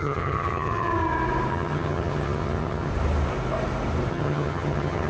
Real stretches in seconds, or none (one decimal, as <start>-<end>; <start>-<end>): 0.9-1.5; 2.9-4.1